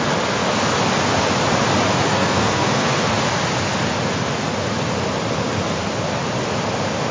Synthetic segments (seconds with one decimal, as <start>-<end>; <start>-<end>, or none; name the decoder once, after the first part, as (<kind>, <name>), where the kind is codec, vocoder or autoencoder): 2.1-3.1 (codec, SNAC)